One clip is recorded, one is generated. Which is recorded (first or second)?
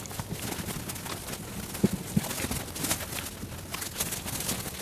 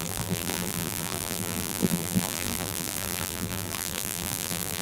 first